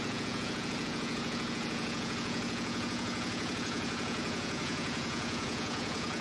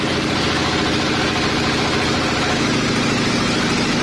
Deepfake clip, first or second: first